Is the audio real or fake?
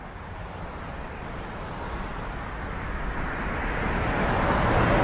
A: real